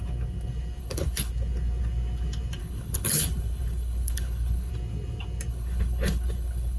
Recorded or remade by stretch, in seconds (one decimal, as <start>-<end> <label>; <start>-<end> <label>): 0.0-0.8 recorded; 0.8-1.3 remade; 1.3-2.6 recorded; 2.6-4.7 remade; 4.7-5.5 recorded; 5.5-6.8 remade